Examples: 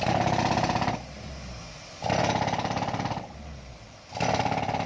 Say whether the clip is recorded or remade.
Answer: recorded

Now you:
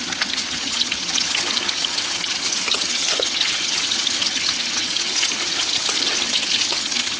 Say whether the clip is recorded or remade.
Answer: remade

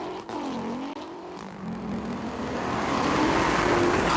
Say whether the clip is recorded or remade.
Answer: recorded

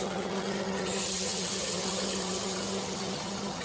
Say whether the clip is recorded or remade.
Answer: remade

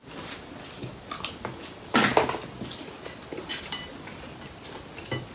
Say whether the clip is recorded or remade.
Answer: recorded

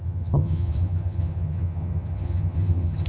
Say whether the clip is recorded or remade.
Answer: remade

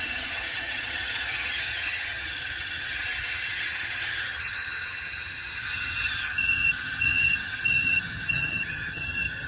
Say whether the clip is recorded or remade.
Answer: remade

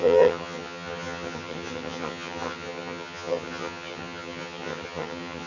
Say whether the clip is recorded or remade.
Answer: remade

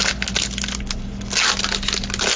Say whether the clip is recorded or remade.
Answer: recorded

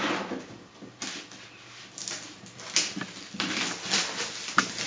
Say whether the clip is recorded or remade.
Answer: recorded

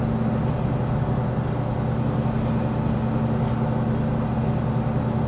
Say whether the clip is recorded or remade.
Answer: recorded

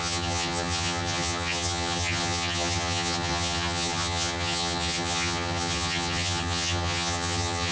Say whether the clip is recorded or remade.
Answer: remade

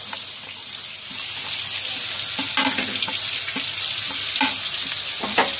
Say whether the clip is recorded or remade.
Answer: recorded